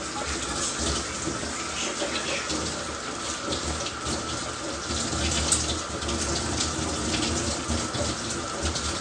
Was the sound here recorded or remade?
recorded